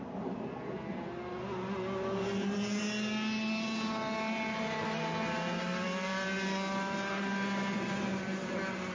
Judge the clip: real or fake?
real